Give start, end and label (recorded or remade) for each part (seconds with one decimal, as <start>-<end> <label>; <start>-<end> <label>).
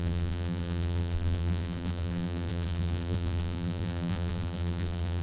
0.0-5.2 remade